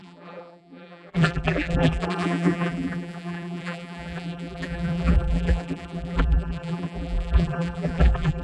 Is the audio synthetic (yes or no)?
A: yes